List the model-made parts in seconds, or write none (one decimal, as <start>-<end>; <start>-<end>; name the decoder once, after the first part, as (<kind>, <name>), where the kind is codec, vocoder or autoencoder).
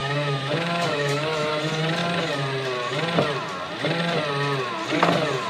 0.0-1.5 (autoencoder, DAC-VAE)